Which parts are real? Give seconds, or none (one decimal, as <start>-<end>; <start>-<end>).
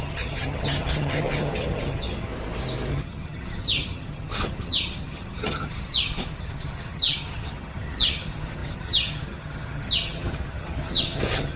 2.3-2.9